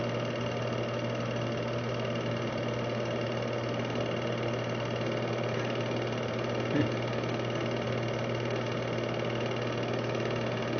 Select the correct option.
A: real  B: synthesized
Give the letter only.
A